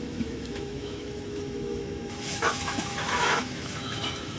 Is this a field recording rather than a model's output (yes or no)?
no